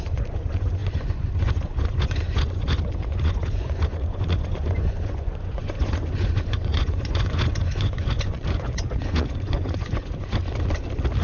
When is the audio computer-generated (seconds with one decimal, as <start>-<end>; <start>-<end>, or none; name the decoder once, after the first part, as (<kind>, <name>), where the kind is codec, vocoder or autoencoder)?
0.0-10.4 (vocoder, Vocos)